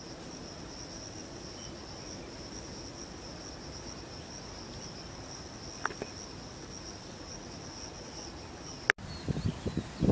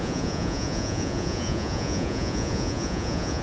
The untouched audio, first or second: first